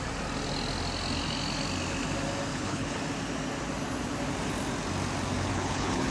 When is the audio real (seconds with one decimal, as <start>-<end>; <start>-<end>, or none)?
0.0-2.5; 3.0-5.5